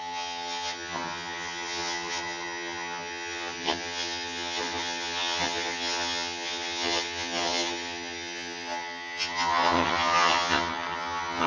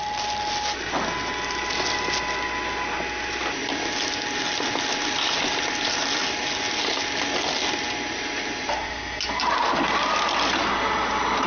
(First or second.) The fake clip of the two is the first